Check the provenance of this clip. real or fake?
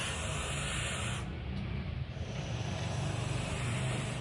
fake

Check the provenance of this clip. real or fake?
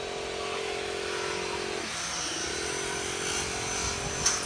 real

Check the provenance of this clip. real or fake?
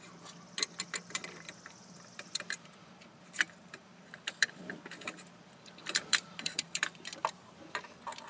fake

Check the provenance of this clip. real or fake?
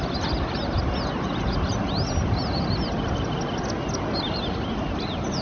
real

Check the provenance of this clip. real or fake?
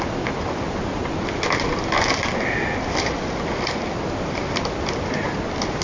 real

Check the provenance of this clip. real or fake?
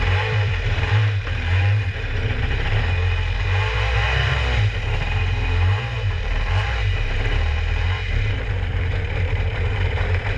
fake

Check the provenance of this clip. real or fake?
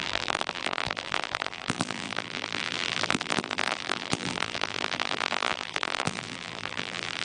fake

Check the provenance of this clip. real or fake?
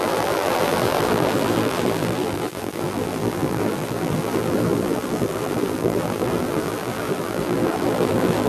fake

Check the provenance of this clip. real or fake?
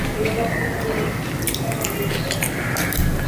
real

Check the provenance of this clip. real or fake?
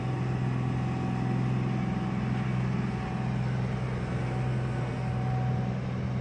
real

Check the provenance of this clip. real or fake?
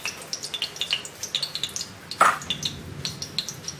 real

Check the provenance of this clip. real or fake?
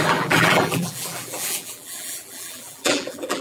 fake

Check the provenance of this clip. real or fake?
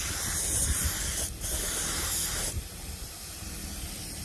real